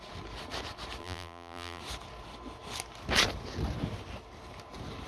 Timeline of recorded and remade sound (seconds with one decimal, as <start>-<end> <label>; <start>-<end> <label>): 0.0-1.0 recorded; 1.0-1.8 remade; 1.8-5.1 recorded